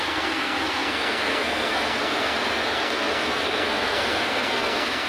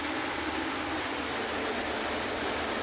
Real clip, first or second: second